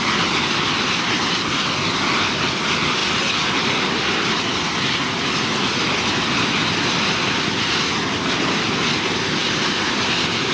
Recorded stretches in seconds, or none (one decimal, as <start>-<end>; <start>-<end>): 0.0-10.5